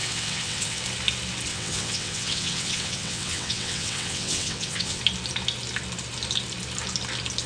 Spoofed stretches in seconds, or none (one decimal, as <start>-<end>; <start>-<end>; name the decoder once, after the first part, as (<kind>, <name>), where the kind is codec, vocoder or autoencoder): 0.0-0.8 (vocoder, WaveNeXt); 1.5-5.0